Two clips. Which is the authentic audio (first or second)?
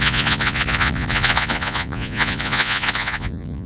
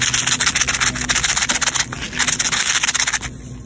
second